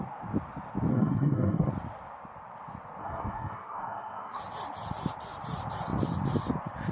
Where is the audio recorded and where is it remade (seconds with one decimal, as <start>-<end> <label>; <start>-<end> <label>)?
0.0-0.9 recorded; 0.9-1.7 remade; 1.7-3.0 recorded; 3.0-4.4 remade; 4.4-6.9 recorded

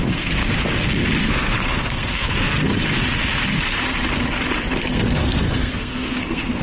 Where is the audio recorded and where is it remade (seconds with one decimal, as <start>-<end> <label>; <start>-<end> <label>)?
0.0-0.4 remade; 0.4-1.3 recorded; 1.3-2.7 remade; 2.7-4.8 recorded; 4.8-6.6 remade

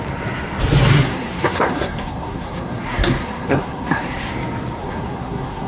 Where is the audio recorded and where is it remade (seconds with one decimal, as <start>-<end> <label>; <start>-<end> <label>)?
0.0-0.9 recorded; 0.9-4.3 remade; 4.3-4.8 recorded; 4.8-5.7 remade

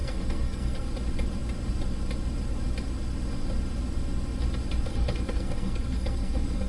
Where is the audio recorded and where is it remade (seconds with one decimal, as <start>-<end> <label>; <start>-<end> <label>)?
0.0-0.9 remade; 0.9-4.9 recorded; 4.9-6.7 remade

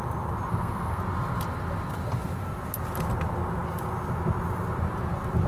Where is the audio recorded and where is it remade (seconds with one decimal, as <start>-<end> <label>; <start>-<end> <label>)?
0.0-0.5 recorded; 0.5-1.0 remade; 1.0-5.5 recorded